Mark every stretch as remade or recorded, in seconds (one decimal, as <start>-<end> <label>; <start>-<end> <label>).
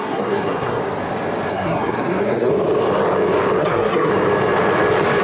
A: 0.0-0.8 remade; 0.8-1.5 recorded; 1.5-2.5 remade; 2.5-3.6 recorded; 3.6-4.1 remade; 4.1-5.2 recorded